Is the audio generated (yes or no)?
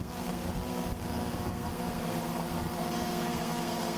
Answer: yes